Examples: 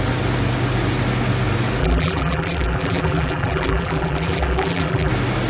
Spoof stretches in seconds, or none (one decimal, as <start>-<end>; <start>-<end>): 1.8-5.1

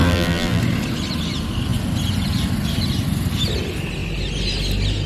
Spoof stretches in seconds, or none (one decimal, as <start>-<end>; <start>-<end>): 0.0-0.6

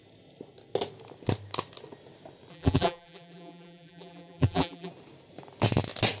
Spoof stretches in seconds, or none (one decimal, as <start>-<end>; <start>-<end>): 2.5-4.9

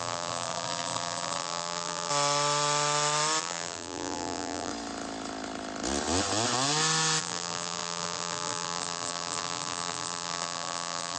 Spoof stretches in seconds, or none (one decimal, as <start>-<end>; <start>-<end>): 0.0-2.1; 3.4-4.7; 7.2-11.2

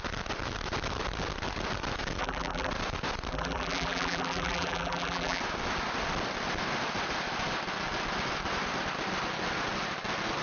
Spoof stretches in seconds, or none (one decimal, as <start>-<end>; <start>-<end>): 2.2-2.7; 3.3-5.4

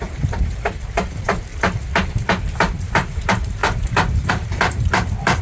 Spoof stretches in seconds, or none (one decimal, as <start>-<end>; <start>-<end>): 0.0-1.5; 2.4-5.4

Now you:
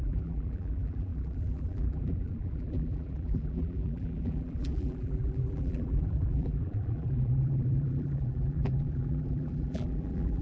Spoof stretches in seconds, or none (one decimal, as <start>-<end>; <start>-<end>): 0.0-10.4